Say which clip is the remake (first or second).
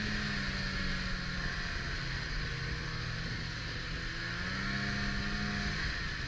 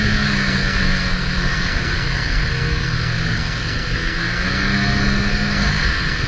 second